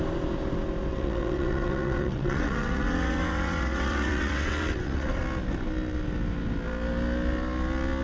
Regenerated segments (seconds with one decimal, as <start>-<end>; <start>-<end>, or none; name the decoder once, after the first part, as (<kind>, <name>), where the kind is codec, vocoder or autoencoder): 0.9-5.2 (vocoder, WaveNeXt)